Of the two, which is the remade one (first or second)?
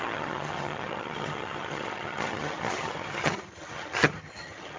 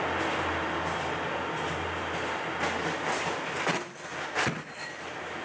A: first